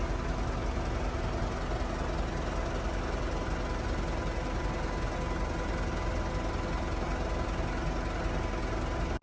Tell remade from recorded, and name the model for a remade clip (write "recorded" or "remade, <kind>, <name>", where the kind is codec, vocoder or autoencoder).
recorded